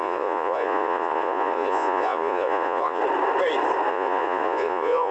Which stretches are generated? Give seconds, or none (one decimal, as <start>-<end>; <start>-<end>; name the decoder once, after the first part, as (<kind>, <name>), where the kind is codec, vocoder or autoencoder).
0.0-3.0 (vocoder, Vocos); 3.9-5.1